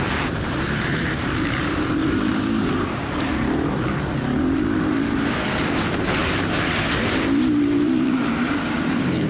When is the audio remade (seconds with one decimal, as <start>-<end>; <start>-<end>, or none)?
0.0-9.3